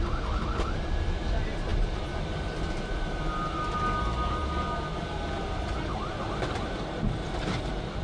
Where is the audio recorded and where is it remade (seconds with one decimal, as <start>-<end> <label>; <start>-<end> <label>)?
0.0-8.0 recorded